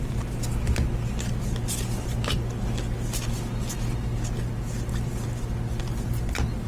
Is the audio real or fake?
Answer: real